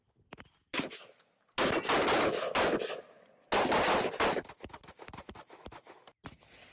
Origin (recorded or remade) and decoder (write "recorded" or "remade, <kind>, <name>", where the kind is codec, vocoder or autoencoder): recorded